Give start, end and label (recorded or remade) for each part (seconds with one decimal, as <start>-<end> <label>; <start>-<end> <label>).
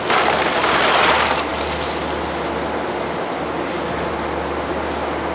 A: 0.0-5.3 recorded